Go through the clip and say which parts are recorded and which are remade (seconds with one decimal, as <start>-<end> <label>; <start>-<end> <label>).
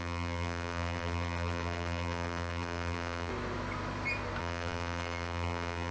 0.0-3.3 remade; 3.3-4.4 recorded; 4.4-5.9 remade